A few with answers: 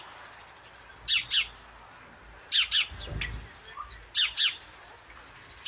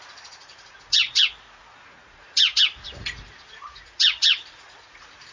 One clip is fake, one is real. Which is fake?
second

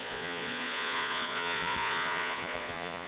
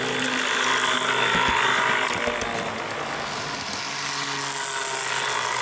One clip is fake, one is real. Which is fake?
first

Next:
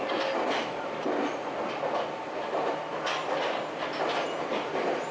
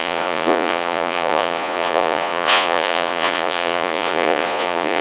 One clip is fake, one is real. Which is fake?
second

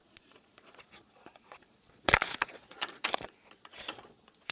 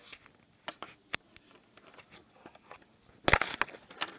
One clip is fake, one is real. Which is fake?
first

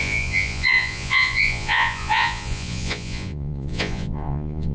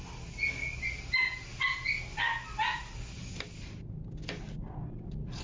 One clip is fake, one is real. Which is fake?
first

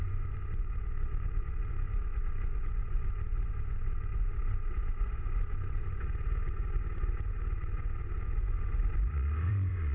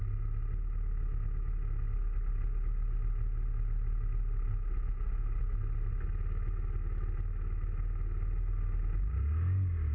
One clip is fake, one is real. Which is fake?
first